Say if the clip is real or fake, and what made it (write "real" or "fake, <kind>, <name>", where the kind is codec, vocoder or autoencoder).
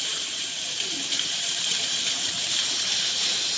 fake, vocoder, BigVGAN v2